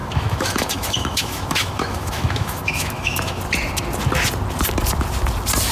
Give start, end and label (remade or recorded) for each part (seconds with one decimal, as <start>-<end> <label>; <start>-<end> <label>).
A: 0.0-3.4 remade; 3.4-5.7 recorded